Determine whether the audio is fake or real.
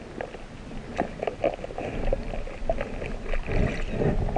real